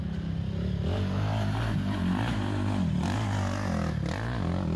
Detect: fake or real real